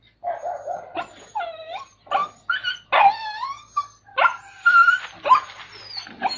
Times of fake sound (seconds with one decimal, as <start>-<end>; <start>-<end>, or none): none